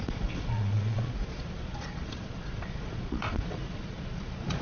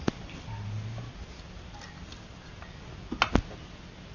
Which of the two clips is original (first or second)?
second